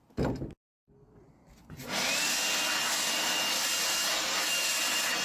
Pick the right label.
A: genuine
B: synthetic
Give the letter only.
A